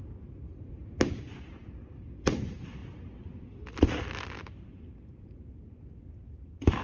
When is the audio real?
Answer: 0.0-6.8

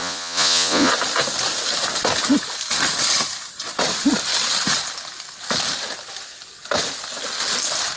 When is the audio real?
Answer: 0.9-8.0

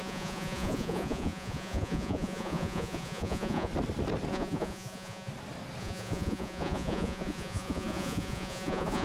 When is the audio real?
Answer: 3.7-4.3; 5.3-5.8

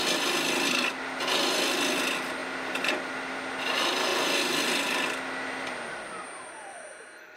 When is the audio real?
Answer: 0.0-7.4

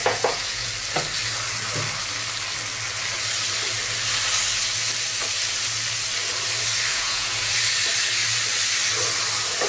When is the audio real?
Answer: 0.7-6.9; 7.5-9.7